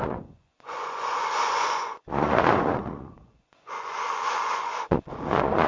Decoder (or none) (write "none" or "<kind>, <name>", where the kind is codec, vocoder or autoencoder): vocoder, Vocos